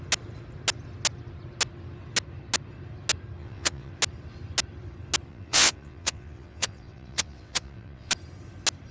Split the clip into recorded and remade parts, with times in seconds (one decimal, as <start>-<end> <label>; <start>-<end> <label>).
0.0-3.4 recorded; 3.4-3.9 remade; 3.9-5.3 recorded; 5.3-8.1 remade; 8.1-8.9 recorded